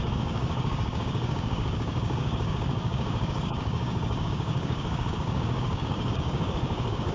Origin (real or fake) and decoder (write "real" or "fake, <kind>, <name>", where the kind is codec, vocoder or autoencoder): fake, codec, DAC